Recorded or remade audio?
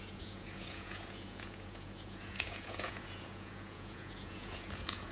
remade